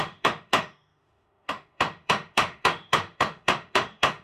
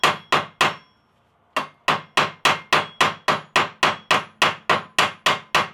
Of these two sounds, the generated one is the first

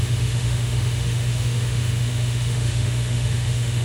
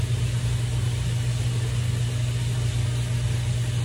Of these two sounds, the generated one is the first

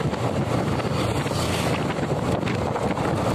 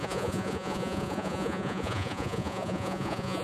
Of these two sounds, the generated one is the second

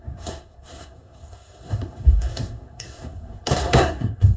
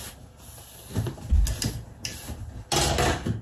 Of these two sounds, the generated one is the first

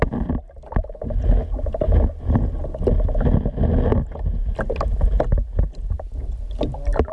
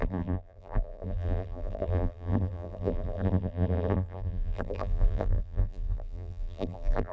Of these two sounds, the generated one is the second